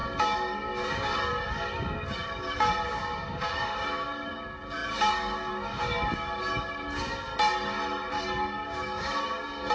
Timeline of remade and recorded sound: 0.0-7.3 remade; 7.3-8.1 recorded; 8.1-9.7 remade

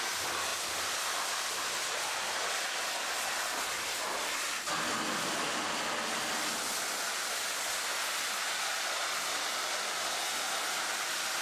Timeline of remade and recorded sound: 0.0-11.4 recorded

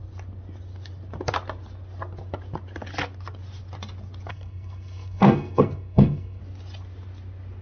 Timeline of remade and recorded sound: 0.0-4.3 recorded; 4.3-6.4 remade; 6.4-7.6 recorded

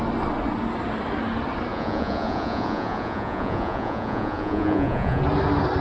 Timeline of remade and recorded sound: 0.0-1.7 recorded; 1.7-5.2 remade; 5.2-5.8 recorded

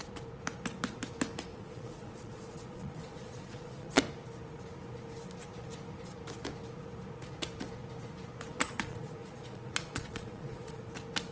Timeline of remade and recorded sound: 0.0-1.5 recorded; 1.5-4.0 remade; 4.0-8.5 recorded; 8.5-10.8 remade; 10.8-11.3 recorded

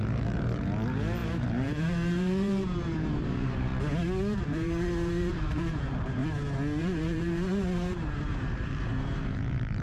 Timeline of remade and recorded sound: 0.0-3.7 remade; 3.7-4.4 recorded; 4.4-6.2 remade; 6.2-6.8 recorded; 6.8-9.8 remade

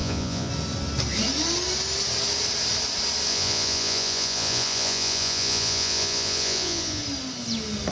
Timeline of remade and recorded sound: 0.0-0.5 remade; 0.5-3.3 recorded; 3.3-7.0 remade; 7.0-7.9 recorded

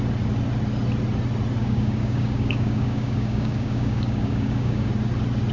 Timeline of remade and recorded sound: 0.0-1.6 recorded; 1.6-4.9 remade; 4.9-5.5 recorded